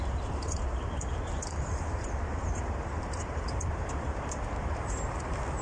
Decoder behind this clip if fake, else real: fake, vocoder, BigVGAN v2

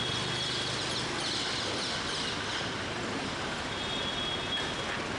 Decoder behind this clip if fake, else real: real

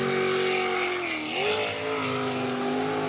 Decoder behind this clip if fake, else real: real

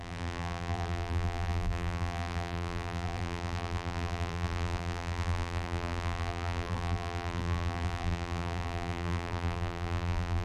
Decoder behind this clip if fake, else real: fake, vocoder, BigVGAN v2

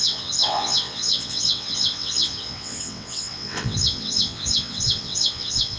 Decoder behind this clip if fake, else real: fake, vocoder, WaveNeXt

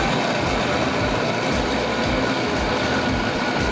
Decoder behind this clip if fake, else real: real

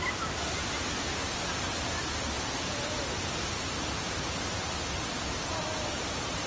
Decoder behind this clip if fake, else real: real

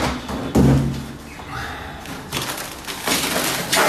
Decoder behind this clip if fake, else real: real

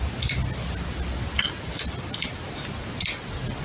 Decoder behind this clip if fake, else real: real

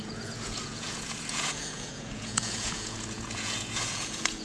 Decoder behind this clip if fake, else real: fake, vocoder, Vocos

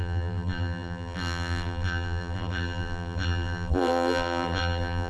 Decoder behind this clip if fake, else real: fake, vocoder, BigVGAN v2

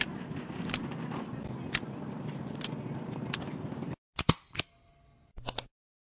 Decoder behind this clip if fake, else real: real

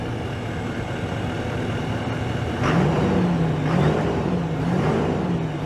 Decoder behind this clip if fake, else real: real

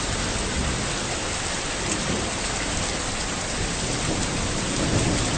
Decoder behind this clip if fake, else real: real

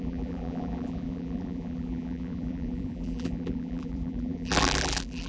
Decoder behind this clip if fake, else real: fake, vocoder, BigVGAN v2